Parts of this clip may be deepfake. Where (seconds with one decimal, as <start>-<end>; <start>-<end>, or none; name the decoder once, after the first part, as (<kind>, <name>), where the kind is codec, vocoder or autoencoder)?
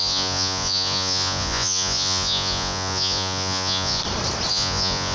0.0-4.0 (vocoder, Vocos); 4.5-5.1